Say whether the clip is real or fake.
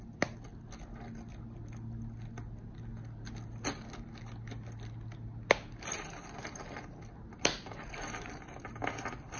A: real